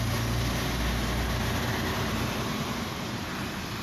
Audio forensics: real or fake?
real